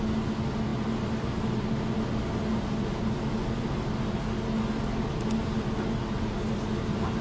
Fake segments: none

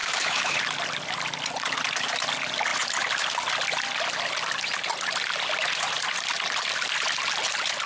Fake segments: 0.0-0.6 (autoencoder, DAC-VAE)

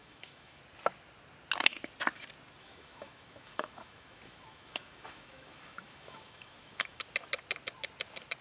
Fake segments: 0.0-0.6 (autoencoder, DAC-VAE); 2.6-7.0

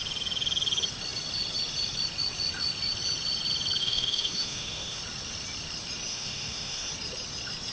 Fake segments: 3.8-5.0 (autoencoder, DAC-VAE); 6.1-6.9

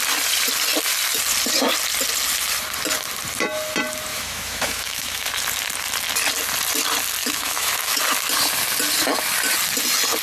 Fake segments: 4.1-5.3 (autoencoder, DAC-VAE); 7.2-8.0